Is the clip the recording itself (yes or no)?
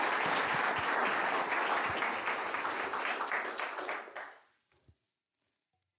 yes